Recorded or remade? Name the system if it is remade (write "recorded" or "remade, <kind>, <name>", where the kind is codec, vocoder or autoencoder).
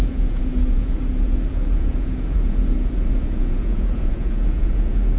remade, vocoder, Vocos